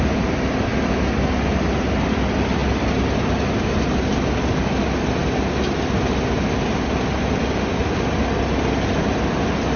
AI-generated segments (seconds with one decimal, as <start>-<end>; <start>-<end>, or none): none